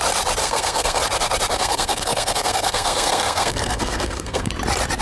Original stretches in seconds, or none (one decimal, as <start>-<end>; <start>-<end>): 0.0-0.4; 1.0-1.5; 4.5-5.0